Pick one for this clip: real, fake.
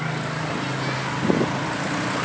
real